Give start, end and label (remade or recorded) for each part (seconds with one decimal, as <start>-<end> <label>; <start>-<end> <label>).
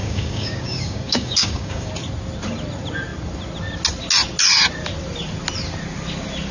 0.0-1.9 remade; 1.9-6.5 recorded